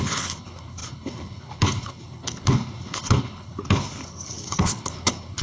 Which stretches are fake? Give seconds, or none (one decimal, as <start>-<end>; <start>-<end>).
0.0-5.4